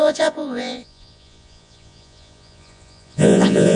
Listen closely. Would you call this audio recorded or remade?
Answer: remade